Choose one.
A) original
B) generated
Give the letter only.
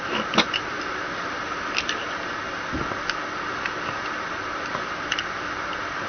B